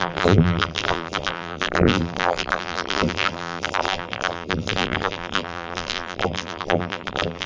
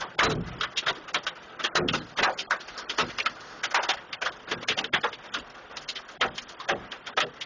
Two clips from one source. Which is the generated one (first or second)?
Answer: first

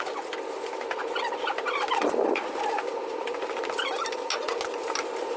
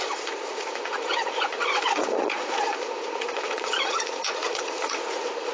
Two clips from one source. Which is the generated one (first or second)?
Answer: second